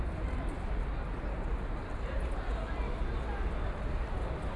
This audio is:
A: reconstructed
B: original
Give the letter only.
B